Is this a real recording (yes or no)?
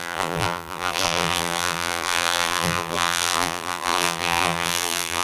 no